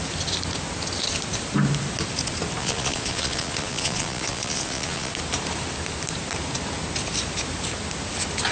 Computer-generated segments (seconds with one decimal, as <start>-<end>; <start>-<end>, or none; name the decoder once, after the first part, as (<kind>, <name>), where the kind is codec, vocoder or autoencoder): 2.6-5.1 (vocoder, Vocos)